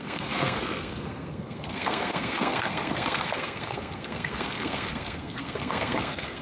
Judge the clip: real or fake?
fake